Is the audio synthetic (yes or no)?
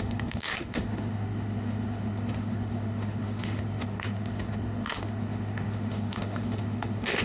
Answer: yes